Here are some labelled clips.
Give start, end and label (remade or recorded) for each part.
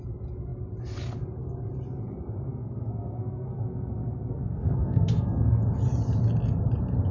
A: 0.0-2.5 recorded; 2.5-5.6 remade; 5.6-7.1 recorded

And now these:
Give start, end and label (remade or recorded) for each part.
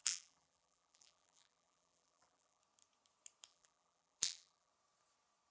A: 0.0-2.6 remade; 2.6-3.5 recorded; 3.5-4.7 remade; 4.7-5.5 recorded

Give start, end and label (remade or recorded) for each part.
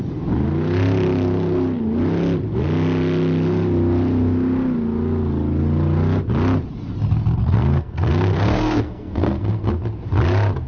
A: 0.0-7.4 recorded; 7.4-9.7 remade; 9.7-10.7 recorded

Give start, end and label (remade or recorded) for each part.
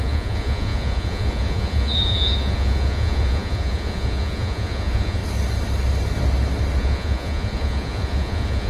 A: 0.0-5.2 remade; 5.2-6.8 recorded; 6.8-8.7 remade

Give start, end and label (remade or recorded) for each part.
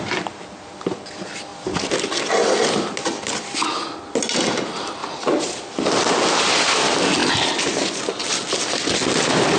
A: 0.0-9.6 recorded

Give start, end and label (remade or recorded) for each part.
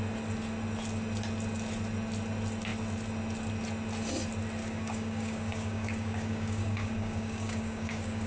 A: 0.0-4.6 recorded; 4.6-8.3 remade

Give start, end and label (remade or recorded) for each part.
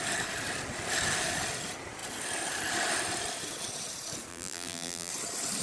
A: 0.0-4.3 recorded; 4.3-5.1 remade; 5.1-5.6 recorded